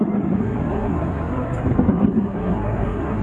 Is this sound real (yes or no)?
no